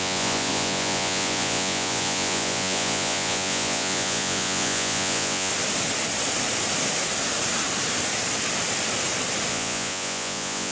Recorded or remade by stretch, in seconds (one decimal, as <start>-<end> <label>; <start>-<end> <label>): 0.0-5.5 remade; 5.5-9.5 recorded; 9.5-10.7 remade